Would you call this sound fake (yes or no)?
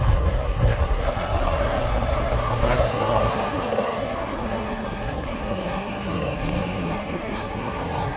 yes